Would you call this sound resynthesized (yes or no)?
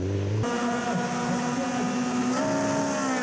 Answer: no